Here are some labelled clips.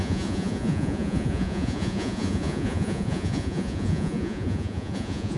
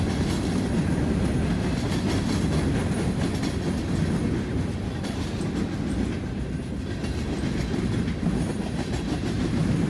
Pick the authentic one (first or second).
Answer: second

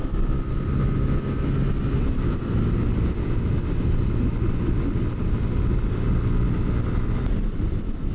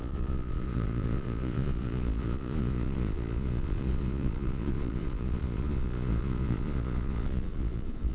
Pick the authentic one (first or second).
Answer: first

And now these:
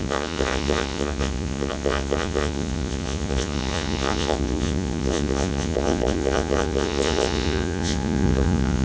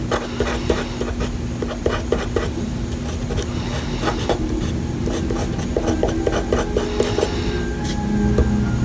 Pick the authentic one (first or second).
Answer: second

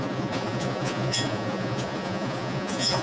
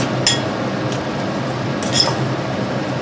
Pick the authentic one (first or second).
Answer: second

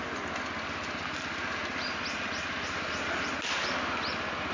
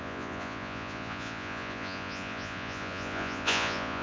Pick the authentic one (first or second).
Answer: first